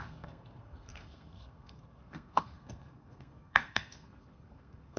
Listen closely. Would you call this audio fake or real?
fake